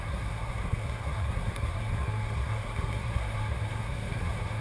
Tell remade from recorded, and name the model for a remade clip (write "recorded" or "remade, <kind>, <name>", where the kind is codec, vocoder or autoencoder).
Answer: remade, codec, SNAC